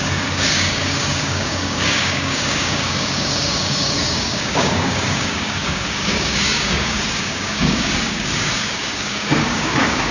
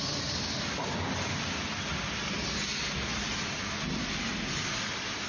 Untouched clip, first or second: second